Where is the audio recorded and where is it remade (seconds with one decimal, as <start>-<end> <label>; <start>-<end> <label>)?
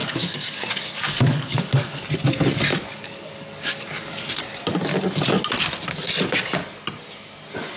0.0-2.0 remade; 2.0-2.7 recorded; 2.7-4.3 remade; 4.3-7.8 recorded